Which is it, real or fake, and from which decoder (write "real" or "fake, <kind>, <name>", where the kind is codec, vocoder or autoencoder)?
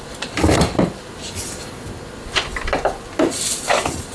real